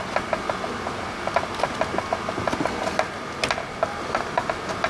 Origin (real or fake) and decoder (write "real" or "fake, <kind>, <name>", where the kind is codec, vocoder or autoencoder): real